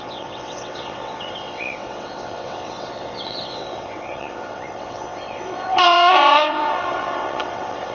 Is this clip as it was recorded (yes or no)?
no